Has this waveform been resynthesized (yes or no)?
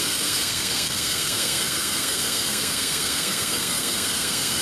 yes